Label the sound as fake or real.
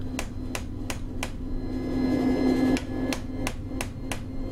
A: real